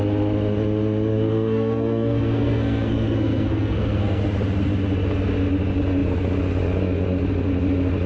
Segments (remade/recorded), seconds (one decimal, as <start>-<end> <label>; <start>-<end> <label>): 0.0-1.1 recorded; 1.1-4.2 remade; 4.2-8.1 recorded